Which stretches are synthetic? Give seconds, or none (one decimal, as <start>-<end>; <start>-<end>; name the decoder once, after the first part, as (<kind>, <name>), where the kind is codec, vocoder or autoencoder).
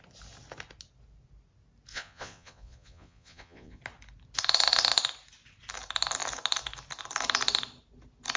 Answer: 1.9-3.8 (vocoder, Vocos)